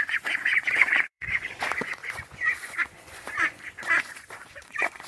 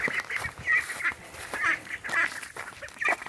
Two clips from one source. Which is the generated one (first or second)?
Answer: first